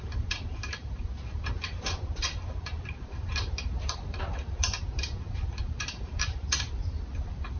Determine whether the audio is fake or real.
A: fake